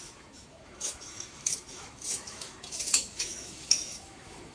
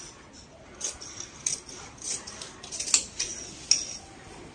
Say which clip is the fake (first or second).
first